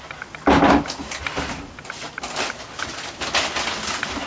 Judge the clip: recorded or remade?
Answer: recorded